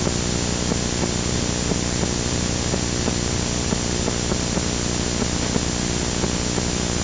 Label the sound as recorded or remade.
recorded